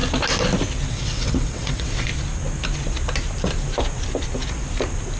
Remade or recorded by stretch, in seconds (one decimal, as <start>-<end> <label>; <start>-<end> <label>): 0.0-0.9 recorded; 0.9-2.1 remade; 2.1-5.2 recorded